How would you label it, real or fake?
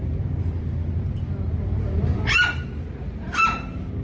real